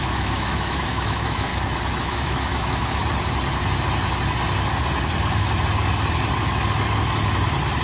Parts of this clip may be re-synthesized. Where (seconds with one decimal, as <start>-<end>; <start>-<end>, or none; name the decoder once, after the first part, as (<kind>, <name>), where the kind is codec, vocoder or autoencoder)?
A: 0.0-1.5 (autoencoder, DAC-VAE); 2.0-3.0

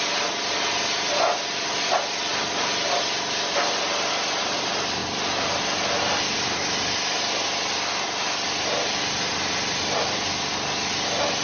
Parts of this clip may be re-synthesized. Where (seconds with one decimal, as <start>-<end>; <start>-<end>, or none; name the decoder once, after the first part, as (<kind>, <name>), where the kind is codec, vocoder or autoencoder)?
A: none

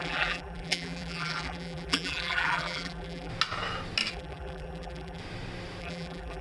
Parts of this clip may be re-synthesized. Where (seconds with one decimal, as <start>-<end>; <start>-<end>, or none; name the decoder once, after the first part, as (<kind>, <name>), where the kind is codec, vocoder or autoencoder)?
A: 0.0-3.3 (vocoder, BigVGAN v2); 4.1-5.2; 5.8-6.4

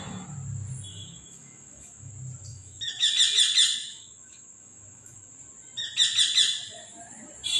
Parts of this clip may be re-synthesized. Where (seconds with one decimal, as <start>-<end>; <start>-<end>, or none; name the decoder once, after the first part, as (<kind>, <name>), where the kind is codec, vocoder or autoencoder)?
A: 0.9-2.1 (autoencoder, DAC-VAE); 2.5-3.1; 3.8-5.3

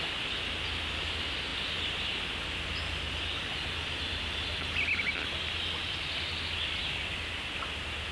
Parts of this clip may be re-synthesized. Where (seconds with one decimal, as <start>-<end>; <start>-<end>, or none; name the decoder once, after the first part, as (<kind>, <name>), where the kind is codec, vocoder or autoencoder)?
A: none

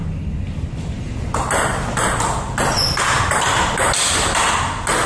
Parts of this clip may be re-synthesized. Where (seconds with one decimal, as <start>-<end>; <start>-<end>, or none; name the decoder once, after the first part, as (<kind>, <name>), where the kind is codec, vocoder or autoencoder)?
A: none